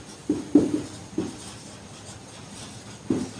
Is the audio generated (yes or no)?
no